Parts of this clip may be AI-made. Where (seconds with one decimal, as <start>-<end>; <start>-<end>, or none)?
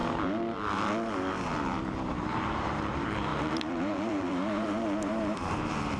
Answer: 2.0-6.0